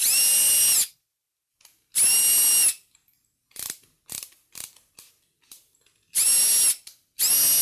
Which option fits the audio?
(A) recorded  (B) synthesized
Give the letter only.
A